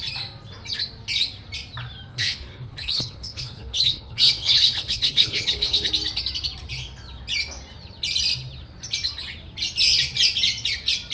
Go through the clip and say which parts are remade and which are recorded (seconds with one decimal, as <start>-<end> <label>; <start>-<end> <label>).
0.0-2.1 recorded; 2.1-5.9 remade; 5.9-11.1 recorded